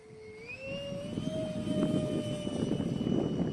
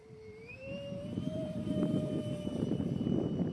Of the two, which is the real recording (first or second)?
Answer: first